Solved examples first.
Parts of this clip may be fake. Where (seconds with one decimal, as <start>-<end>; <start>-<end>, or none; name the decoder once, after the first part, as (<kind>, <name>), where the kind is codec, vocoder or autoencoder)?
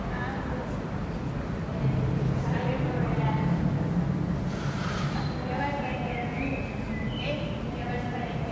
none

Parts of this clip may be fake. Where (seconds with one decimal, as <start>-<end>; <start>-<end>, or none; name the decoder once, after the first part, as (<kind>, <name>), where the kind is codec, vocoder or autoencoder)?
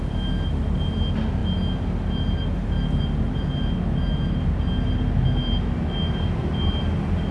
none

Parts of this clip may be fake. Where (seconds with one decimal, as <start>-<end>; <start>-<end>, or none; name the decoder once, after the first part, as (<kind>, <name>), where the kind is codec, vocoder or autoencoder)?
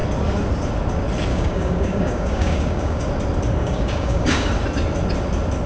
1.3-3.1 (codec, DAC); 3.6-4.5